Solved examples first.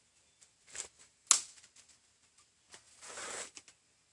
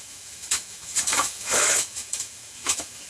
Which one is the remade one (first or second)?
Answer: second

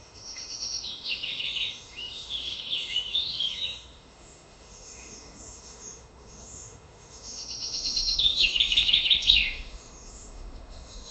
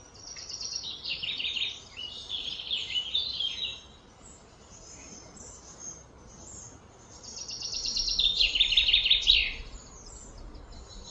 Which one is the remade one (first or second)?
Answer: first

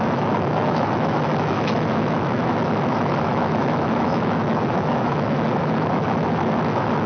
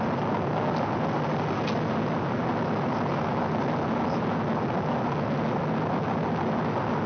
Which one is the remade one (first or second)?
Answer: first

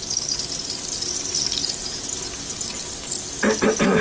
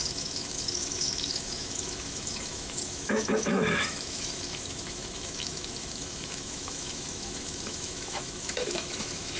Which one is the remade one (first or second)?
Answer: second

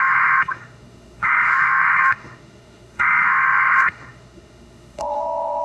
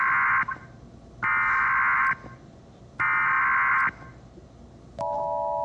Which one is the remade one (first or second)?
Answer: first